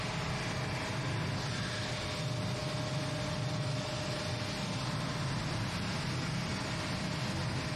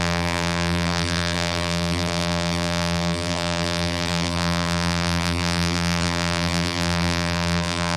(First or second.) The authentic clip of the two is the first